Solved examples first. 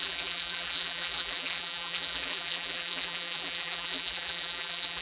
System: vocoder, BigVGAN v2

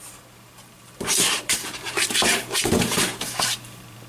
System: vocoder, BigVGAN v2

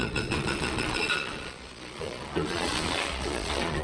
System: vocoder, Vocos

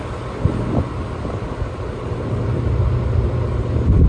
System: none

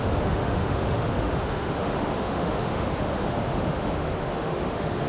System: autoencoder, DAC-VAE